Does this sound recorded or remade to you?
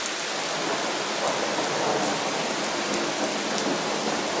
recorded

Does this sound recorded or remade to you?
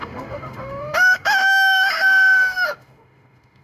remade